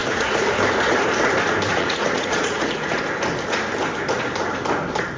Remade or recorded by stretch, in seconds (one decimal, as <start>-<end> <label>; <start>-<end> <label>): 0.0-0.5 remade; 0.5-1.7 recorded; 1.7-3.0 remade; 3.0-5.2 recorded